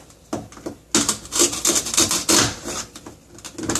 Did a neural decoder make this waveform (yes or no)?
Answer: no